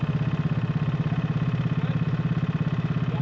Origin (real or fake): real